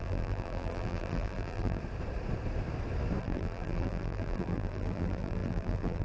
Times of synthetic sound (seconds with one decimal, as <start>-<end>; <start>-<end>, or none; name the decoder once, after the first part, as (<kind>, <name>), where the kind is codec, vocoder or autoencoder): 0.0-1.8 (vocoder, BigVGAN v2); 3.2-6.0